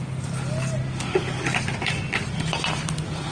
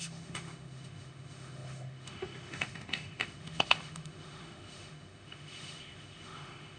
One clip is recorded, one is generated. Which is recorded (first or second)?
first